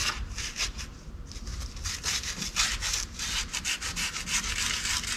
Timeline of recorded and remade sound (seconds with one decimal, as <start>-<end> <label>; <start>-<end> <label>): 0.0-5.2 recorded